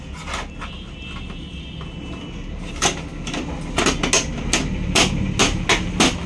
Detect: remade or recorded recorded